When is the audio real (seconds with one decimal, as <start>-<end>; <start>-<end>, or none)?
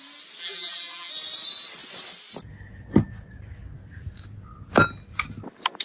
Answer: 0.0-0.4; 1.1-5.8